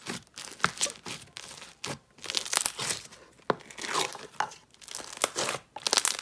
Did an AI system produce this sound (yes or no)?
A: no